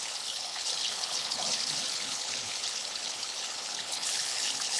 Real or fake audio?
fake